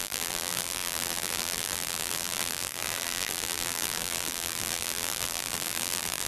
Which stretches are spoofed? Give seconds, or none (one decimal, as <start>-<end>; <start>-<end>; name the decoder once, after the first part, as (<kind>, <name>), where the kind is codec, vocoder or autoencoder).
0.0-6.3 (vocoder, BigVGAN v2)

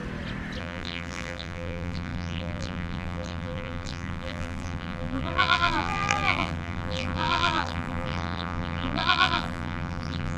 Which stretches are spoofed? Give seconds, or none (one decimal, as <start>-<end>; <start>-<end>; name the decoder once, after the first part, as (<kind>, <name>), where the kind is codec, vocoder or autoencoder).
0.6-10.4 (vocoder, BigVGAN v2)

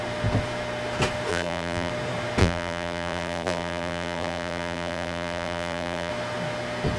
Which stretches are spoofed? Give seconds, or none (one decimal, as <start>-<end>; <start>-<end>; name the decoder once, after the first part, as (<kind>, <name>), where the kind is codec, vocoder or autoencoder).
1.3-1.9 (vocoder, BigVGAN v2); 2.4-6.1

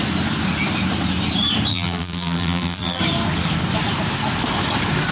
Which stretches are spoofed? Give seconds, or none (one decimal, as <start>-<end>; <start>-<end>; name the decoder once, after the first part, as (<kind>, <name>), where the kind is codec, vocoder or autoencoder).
1.7-3.0 (vocoder, BigVGAN v2)

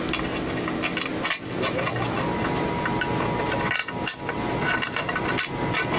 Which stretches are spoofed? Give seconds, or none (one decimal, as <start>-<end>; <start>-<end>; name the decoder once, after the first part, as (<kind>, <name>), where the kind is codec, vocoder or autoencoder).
none

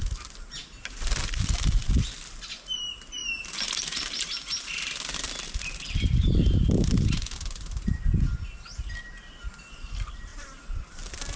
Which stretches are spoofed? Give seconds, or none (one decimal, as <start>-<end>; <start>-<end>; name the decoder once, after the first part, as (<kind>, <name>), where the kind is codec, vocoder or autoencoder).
6.2-8.1 (vocoder, BigVGAN v2); 10.3-10.8